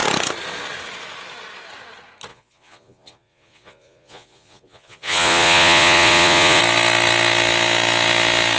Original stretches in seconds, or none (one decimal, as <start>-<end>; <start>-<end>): 0.0-2.3; 6.6-8.6